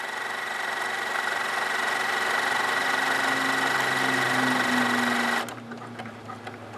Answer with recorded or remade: recorded